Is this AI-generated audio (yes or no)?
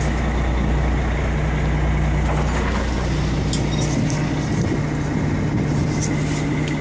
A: no